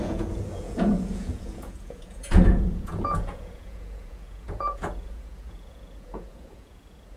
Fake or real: fake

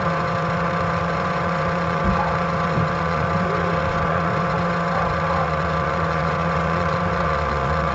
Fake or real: fake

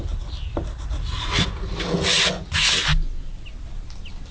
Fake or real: real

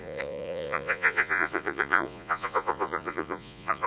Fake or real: fake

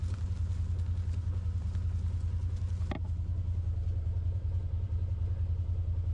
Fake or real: real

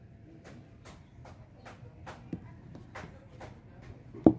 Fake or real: real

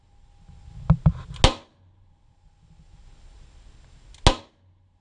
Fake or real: real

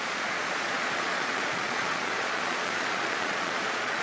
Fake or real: fake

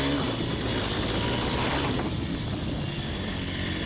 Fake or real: real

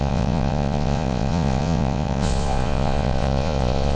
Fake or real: fake